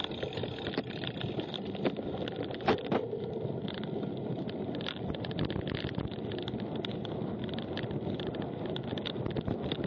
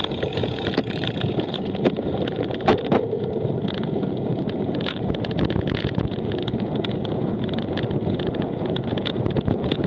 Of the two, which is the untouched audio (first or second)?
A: first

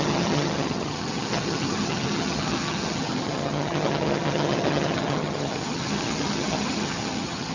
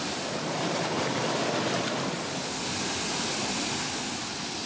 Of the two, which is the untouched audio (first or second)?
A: second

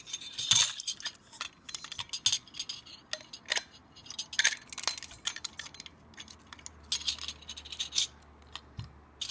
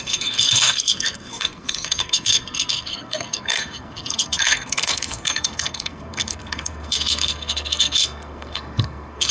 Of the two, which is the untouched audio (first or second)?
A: first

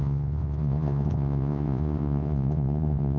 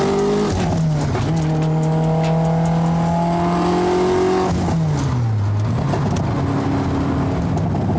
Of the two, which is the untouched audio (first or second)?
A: second